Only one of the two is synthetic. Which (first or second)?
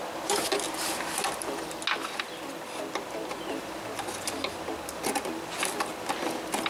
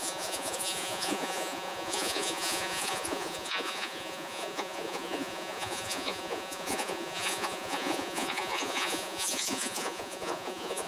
second